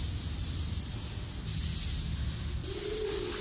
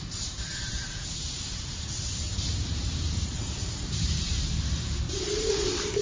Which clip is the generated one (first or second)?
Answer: second